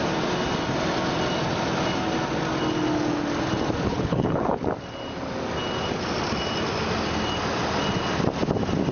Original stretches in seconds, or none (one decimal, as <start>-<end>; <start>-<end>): 0.0-3.9; 4.7-8.9